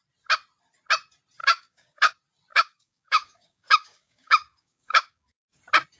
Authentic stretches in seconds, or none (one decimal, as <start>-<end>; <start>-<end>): 0.0-1.4; 2.1-2.5; 5.6-6.0